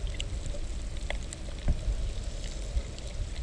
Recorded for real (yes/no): no